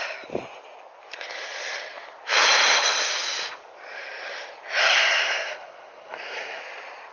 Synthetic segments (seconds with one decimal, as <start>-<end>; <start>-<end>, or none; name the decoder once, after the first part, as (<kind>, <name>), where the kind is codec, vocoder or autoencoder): 4.8-6.6 (codec, SNAC)